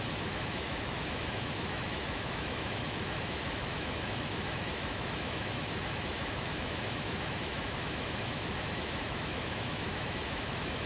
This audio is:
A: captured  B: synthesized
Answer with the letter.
B